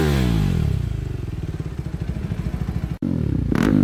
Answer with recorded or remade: recorded